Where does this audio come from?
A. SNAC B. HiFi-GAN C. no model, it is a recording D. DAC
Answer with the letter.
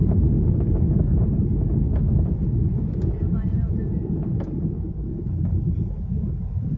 C